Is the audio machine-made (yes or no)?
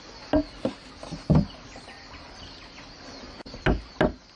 no